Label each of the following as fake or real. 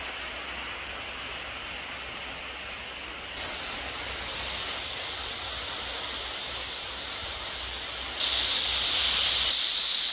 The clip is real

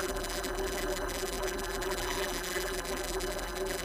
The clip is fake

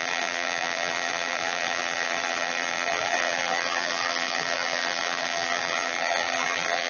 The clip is fake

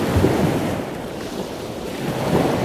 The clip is fake